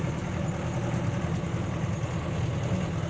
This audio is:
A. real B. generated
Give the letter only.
A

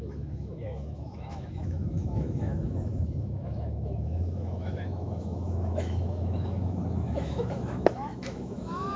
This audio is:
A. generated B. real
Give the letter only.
A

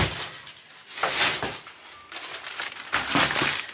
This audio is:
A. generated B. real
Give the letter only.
B